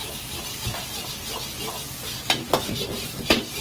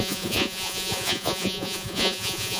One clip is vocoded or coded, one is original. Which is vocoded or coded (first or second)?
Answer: second